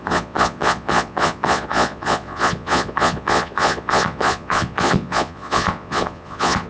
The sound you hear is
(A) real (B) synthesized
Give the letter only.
B